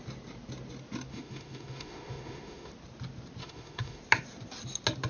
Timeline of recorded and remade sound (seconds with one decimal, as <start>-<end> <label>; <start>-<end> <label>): 0.0-1.1 recorded; 1.1-2.7 remade; 2.7-3.4 recorded; 3.4-4.0 remade; 4.0-5.1 recorded